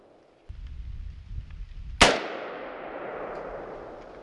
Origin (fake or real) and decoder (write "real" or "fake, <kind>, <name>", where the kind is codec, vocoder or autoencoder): real